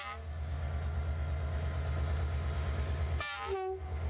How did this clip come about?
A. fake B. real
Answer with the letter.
B